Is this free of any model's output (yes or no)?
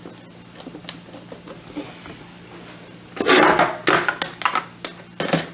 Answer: yes